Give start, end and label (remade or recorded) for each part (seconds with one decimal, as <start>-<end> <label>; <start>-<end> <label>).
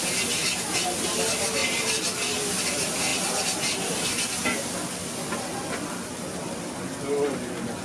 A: 0.0-7.8 recorded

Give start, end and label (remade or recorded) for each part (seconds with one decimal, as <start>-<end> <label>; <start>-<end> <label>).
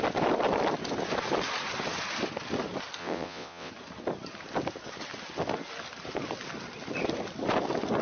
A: 0.0-3.0 recorded; 3.0-3.7 remade; 3.7-8.0 recorded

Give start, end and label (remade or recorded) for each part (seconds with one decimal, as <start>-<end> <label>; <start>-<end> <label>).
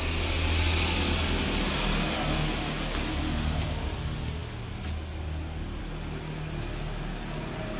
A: 0.0-7.8 recorded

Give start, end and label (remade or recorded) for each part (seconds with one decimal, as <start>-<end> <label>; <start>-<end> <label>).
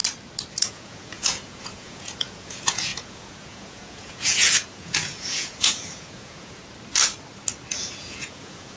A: 0.0-0.6 recorded; 0.6-6.6 remade; 6.6-7.8 recorded; 7.8-8.8 remade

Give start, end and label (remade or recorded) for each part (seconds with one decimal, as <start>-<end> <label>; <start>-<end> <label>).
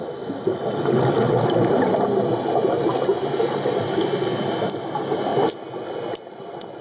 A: 0.0-6.8 recorded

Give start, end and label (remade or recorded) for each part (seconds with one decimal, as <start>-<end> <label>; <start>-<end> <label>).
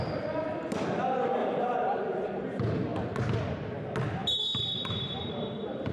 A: 0.0-1.4 recorded; 1.4-2.5 remade; 2.5-5.9 recorded